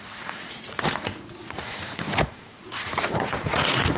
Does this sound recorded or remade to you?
remade